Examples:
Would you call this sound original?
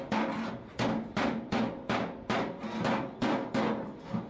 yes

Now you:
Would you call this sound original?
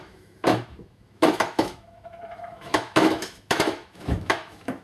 no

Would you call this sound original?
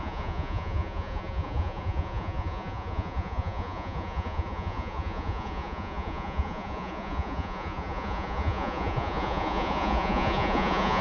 no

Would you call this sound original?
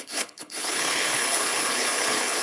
no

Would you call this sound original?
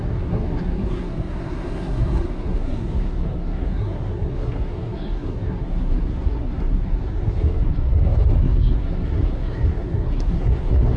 no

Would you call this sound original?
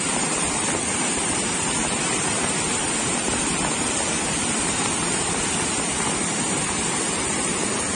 yes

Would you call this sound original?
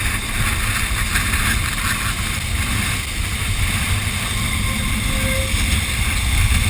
yes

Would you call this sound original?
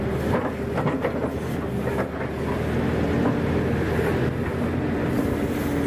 yes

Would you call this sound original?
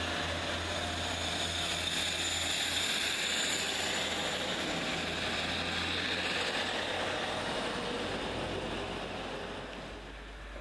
yes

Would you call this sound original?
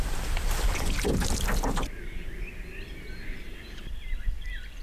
no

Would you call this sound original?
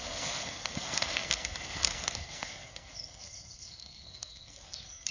no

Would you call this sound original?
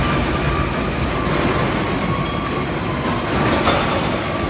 yes